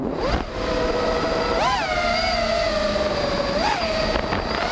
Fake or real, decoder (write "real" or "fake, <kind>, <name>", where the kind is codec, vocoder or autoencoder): real